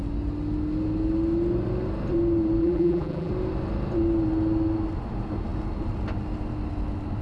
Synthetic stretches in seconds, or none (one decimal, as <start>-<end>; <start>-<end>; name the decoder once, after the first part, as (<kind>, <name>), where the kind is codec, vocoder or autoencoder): 2.6-3.3 (vocoder, BigVGAN v2)